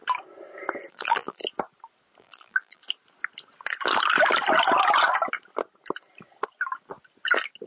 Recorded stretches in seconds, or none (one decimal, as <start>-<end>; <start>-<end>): 0.0-0.9; 1.4-2.2; 2.8-7.7